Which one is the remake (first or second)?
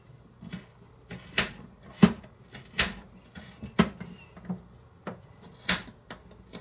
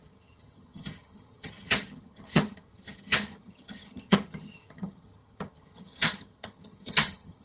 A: second